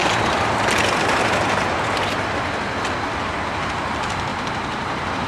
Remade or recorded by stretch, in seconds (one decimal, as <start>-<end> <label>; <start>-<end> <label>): 0.0-4.3 recorded; 4.3-5.3 remade